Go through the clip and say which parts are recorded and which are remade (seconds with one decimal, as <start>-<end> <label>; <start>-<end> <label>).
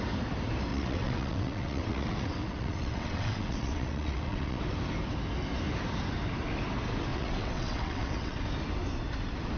0.0-0.7 recorded; 0.7-4.6 remade; 4.6-7.1 recorded; 7.1-8.4 remade; 8.4-9.6 recorded